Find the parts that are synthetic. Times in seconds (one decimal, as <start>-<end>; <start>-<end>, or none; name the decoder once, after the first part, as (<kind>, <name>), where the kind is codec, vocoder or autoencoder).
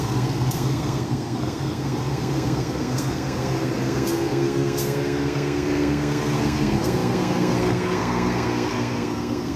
0.0-9.6 (codec, SNAC)